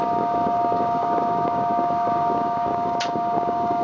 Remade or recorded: remade